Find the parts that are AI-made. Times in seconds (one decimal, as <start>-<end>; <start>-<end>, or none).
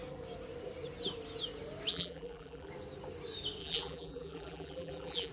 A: 1.9-2.7; 3.6-5.3